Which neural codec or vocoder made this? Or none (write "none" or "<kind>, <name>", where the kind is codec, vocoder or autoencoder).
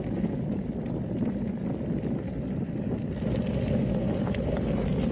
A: none